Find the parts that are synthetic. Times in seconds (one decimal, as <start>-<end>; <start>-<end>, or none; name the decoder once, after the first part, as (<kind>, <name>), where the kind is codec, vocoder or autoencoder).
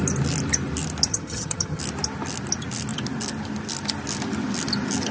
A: 1.1-1.8 (vocoder, HiFi-GAN)